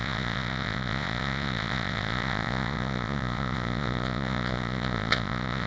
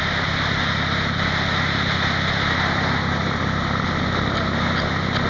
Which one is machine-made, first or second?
first